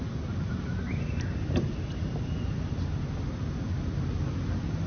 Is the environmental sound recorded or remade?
recorded